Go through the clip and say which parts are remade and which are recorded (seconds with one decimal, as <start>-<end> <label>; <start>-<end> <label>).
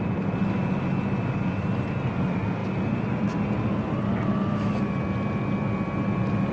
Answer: 0.0-6.5 recorded